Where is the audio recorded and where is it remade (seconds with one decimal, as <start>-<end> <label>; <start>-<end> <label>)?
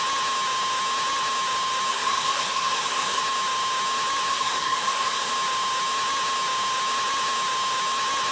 0.0-1.9 recorded; 1.9-3.2 remade; 3.2-4.3 recorded; 4.3-5.3 remade; 5.3-8.3 recorded